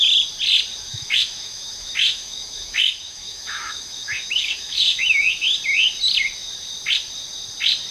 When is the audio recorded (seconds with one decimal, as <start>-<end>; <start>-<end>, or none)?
0.0-0.9; 5.3-7.9